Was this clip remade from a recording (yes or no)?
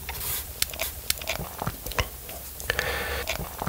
no